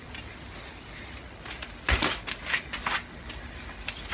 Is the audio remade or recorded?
recorded